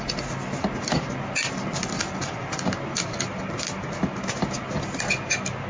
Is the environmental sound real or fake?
real